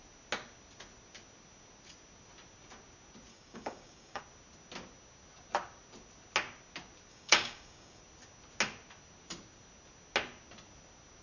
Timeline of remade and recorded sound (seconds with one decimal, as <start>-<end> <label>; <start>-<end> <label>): 0.0-3.3 recorded; 3.3-4.2 remade; 4.2-7.1 recorded; 7.1-8.0 remade; 8.0-11.2 recorded